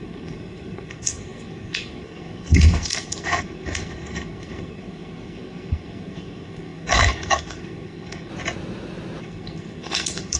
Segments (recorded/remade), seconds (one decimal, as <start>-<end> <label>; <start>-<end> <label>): 0.0-8.3 remade; 8.3-9.2 recorded; 9.2-10.4 remade